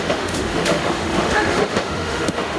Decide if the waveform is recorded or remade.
remade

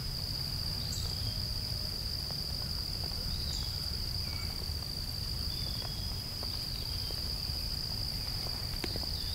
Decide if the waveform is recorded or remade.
remade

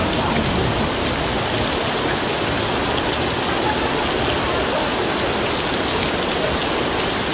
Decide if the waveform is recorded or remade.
recorded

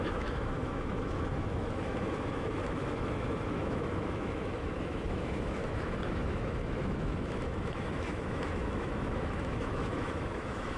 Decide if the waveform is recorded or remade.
remade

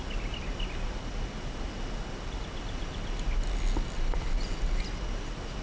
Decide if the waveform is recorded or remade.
recorded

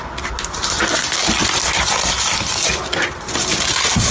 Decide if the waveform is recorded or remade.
recorded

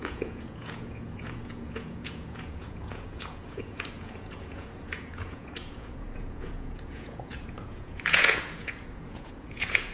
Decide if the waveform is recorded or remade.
remade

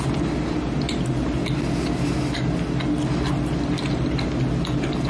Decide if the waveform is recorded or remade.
remade